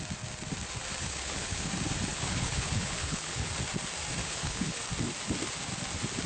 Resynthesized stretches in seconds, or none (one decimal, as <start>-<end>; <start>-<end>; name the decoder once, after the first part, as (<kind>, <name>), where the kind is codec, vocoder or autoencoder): 1.0-1.7 (codec, HILCodec); 2.1-3.5; 4.2-4.8